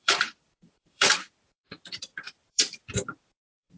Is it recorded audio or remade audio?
remade